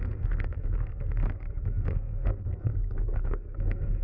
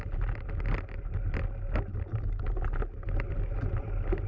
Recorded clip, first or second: second